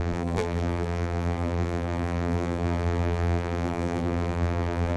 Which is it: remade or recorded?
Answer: remade